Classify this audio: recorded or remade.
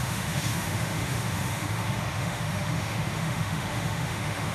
remade